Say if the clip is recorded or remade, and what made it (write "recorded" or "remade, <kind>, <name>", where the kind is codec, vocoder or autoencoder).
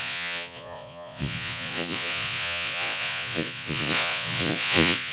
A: remade, vocoder, Vocos